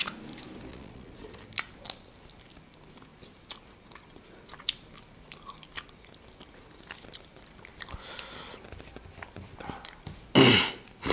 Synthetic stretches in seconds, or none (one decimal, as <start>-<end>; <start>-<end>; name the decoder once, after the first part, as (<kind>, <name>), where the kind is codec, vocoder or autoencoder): 0.7-1.3 (vocoder, Vocos)